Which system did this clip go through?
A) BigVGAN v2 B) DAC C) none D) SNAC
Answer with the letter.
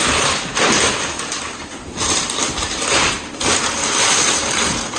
C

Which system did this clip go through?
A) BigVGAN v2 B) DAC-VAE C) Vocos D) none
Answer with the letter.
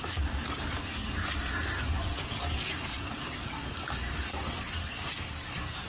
D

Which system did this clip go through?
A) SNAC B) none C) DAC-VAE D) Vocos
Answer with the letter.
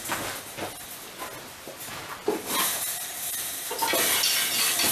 B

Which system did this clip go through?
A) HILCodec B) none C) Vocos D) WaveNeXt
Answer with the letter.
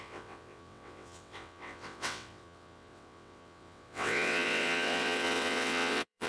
D